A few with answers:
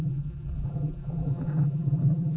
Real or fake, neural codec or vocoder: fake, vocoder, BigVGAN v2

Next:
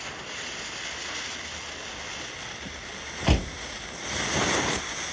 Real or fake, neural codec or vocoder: real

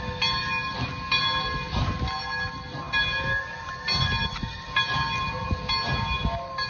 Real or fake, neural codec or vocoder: real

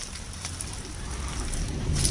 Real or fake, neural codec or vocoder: real